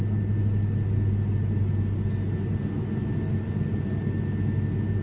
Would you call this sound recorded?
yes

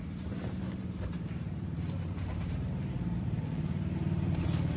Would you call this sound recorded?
no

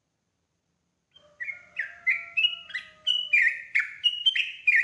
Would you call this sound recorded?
yes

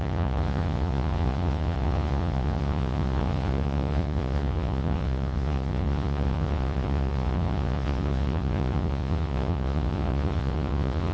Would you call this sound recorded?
no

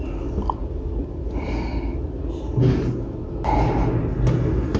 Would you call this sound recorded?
yes